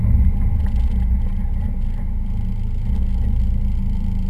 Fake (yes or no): no